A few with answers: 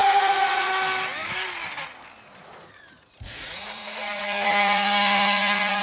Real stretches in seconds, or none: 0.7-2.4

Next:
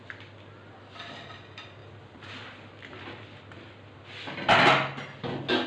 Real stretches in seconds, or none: 0.0-5.7

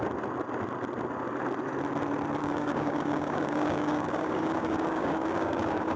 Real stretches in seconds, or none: 0.0-2.4

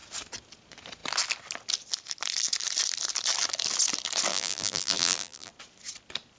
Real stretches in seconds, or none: 0.0-4.3; 5.5-6.4

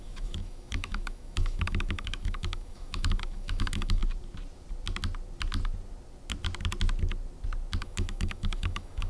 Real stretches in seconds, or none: 4.0-7.8

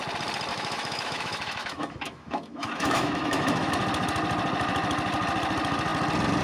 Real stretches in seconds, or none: 0.0-0.5; 3.7-6.4

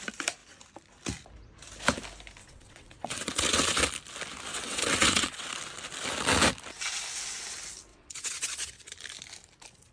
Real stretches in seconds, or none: 0.0-2.4; 3.8-4.5; 5.5-7.9; 8.9-9.9